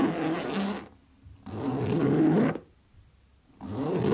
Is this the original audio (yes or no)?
yes